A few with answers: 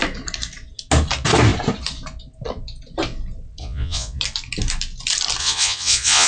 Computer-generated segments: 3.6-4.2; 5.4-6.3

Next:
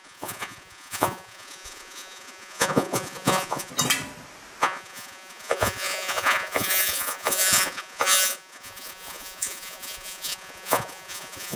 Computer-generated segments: 0.0-3.7; 4.6-11.6

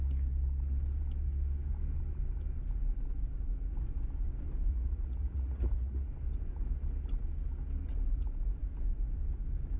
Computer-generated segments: 4.7-6.1

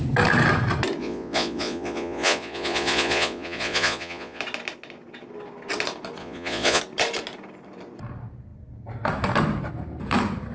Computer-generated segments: 1.0-4.4; 6.2-6.8